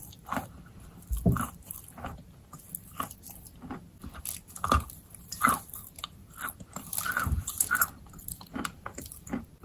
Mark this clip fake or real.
real